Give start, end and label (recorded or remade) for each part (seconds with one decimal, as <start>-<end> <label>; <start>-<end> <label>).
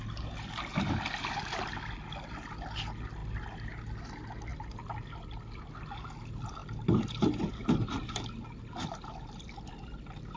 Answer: 0.0-3.2 recorded; 3.2-3.8 remade; 3.8-4.5 recorded; 4.5-5.6 remade; 5.6-10.4 recorded